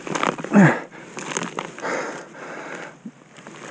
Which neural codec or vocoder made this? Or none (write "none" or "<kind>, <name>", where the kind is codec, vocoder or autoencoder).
none